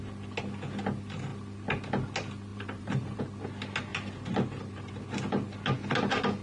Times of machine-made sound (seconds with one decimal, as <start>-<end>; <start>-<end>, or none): 2.5-3.2; 3.9-4.9